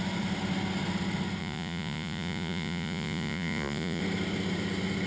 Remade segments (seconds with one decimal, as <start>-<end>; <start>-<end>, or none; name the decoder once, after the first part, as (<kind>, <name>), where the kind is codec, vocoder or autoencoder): 1.4-4.0 (vocoder, Vocos)